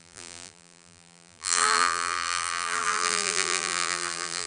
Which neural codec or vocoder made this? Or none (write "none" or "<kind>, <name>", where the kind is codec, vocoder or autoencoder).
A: vocoder, BigVGAN v2